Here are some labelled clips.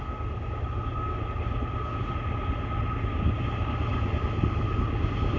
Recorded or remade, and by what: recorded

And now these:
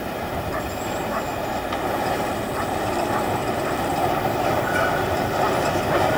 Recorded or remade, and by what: remade, vocoder, BigVGAN v2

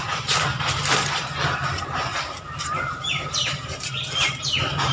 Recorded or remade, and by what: remade, vocoder, BigVGAN v2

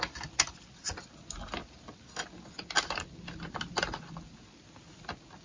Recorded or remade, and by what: recorded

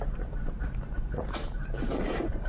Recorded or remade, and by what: remade, vocoder, BigVGAN v2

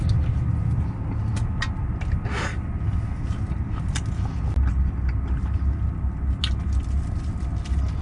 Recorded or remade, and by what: recorded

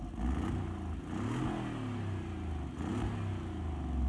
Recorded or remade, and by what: recorded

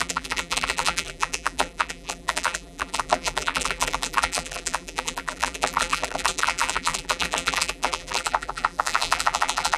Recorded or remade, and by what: remade, vocoder, BigVGAN v2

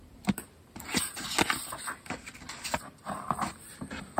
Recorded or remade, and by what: recorded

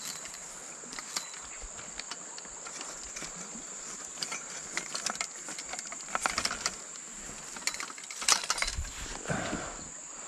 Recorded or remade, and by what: recorded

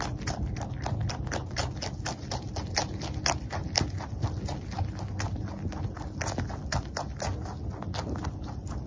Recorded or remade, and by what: recorded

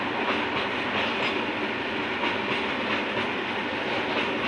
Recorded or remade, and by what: recorded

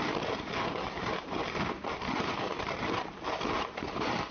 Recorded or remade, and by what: remade, vocoder, BigVGAN v2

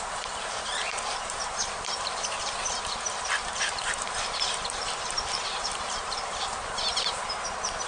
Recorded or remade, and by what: remade, vocoder, BigVGAN v2